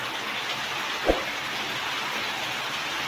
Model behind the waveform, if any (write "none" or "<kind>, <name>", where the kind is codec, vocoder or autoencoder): none